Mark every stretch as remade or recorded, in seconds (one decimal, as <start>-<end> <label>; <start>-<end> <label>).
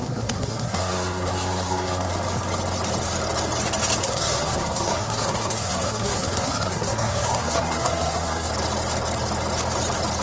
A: 0.0-2.1 remade; 2.1-4.0 recorded; 4.0-8.5 remade; 8.5-10.2 recorded